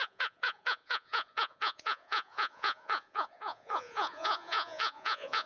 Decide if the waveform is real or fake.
fake